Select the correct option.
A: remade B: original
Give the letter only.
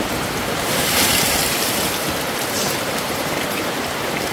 A